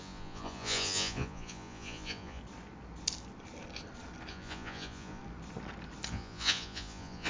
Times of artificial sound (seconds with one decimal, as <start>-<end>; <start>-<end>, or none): 0.0-2.4; 4.3-5.2; 6.1-7.3